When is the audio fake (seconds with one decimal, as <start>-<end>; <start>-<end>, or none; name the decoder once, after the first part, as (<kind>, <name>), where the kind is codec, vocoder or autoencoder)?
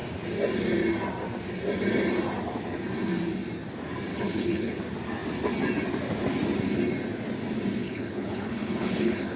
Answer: 4.1-4.8 (codec, HILCodec); 7.8-9.4